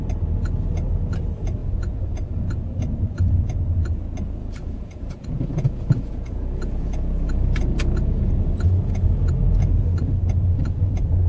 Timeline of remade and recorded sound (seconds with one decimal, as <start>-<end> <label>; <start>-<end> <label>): 0.0-1.6 recorded; 1.6-2.6 remade; 2.6-4.4 recorded; 4.4-8.3 remade; 8.3-8.8 recorded; 8.8-9.3 remade; 9.3-11.3 recorded